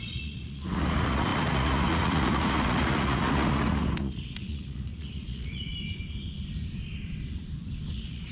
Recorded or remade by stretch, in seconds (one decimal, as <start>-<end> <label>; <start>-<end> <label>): 0.0-5.7 remade; 5.7-7.9 recorded; 7.9-8.3 remade